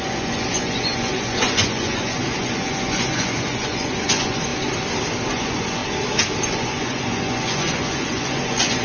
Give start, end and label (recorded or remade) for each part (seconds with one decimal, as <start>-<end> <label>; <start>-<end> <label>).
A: 0.0-4.5 remade; 4.5-5.3 recorded; 5.3-5.8 remade; 5.8-6.4 recorded; 6.4-8.8 remade